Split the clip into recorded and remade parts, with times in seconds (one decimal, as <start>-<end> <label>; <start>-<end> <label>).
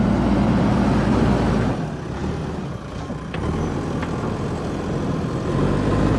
0.0-6.2 recorded